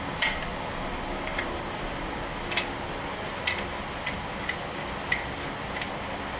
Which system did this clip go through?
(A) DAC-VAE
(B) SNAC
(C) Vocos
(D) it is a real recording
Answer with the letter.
D